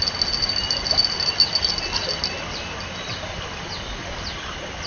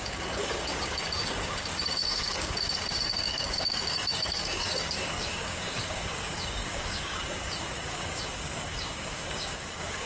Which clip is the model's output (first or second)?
second